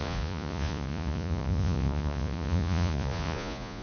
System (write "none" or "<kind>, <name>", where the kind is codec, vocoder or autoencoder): vocoder, Vocos